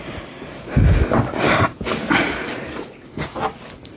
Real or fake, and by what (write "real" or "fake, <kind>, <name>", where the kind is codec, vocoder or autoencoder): real